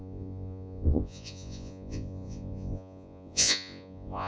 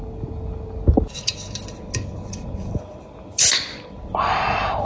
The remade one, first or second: first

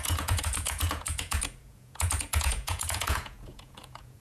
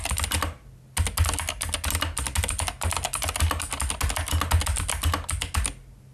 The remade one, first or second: first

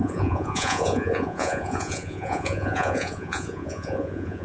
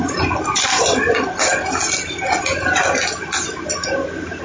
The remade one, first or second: first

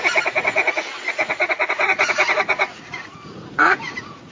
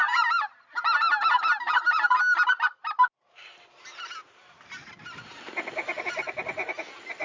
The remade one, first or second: first